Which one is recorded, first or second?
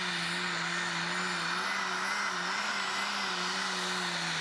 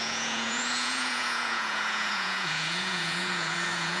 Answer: first